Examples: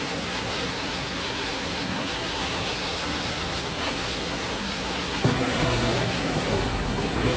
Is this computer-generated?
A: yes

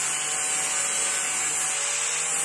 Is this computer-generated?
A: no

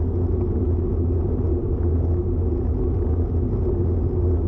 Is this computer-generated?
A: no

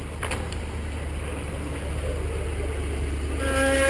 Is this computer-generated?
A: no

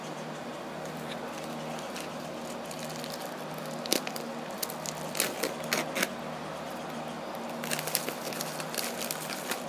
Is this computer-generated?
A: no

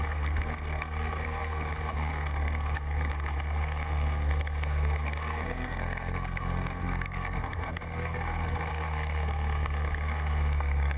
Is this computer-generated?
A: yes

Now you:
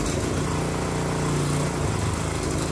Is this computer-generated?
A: no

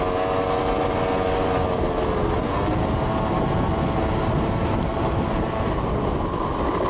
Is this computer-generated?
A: no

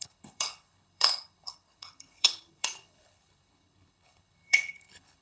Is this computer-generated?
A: yes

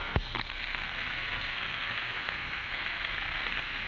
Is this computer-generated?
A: yes